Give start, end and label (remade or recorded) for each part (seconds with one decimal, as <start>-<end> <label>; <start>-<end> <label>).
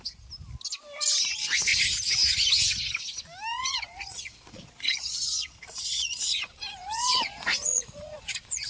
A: 0.0-3.5 recorded; 3.5-8.7 remade